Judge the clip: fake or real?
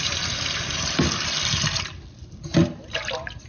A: real